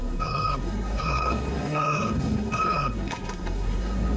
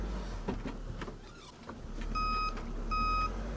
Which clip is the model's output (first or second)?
first